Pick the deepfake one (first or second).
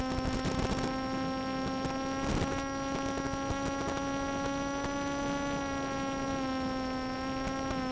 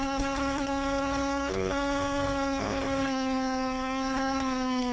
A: second